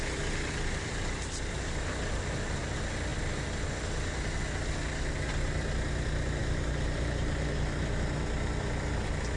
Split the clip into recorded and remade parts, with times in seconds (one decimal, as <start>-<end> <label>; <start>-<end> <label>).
0.0-9.4 recorded